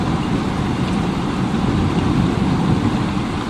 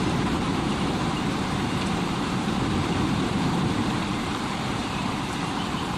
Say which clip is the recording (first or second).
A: first